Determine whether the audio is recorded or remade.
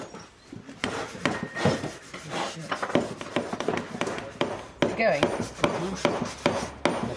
recorded